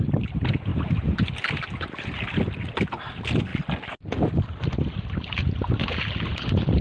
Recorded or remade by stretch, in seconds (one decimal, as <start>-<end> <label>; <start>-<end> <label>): 0.0-6.8 recorded